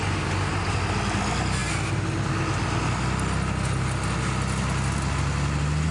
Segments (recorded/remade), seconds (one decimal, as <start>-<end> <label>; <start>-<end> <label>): 0.0-5.9 recorded